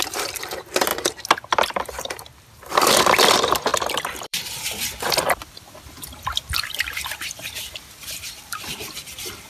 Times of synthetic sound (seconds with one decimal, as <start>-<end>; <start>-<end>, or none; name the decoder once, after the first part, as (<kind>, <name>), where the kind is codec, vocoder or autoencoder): 3.7-7.7 (vocoder, BigVGAN v2)